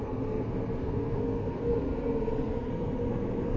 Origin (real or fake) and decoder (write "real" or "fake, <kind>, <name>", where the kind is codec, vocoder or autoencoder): fake, codec, SNAC